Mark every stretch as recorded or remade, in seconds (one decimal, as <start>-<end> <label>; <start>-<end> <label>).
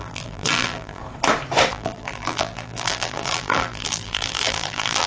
0.0-1.0 remade; 1.0-1.7 recorded; 1.7-5.1 remade